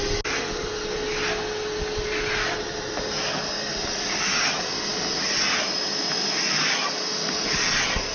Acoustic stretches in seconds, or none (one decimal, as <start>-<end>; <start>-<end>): 0.0-8.1

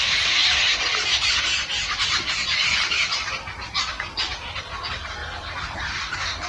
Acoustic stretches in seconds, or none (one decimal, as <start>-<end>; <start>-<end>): 0.0-6.5

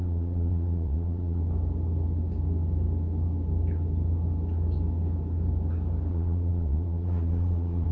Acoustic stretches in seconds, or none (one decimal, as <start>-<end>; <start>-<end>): 1.4-6.1

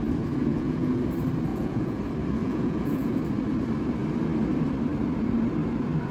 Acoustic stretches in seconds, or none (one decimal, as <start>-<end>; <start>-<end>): 0.0-0.4; 1.0-1.5; 2.0-2.4; 3.2-6.1

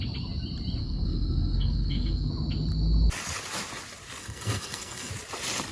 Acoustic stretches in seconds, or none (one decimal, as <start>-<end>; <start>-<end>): 0.0-0.8; 2.3-4.2; 5.1-5.7

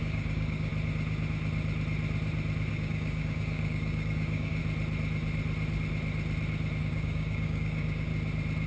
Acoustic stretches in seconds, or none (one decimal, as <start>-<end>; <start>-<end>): 0.7-2.7; 4.6-6.8; 8.1-8.7

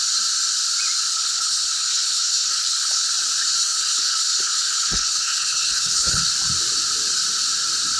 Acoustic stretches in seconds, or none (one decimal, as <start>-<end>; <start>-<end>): 0.0-1.1; 3.1-3.6; 6.2-8.0